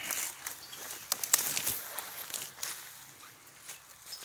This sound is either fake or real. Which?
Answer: real